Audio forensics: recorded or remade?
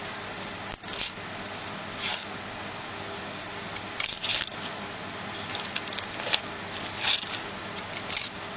recorded